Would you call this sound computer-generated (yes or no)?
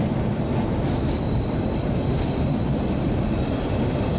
no